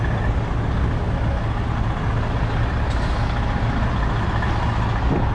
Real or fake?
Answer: real